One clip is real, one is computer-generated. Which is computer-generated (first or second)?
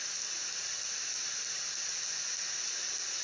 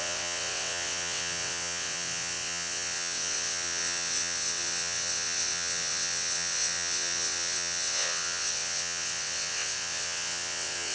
second